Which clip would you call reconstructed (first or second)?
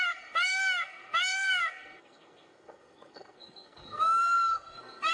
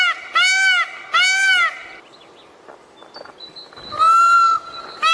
first